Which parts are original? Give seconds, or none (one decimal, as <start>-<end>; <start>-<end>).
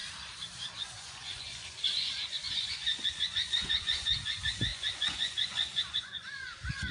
0.0-0.7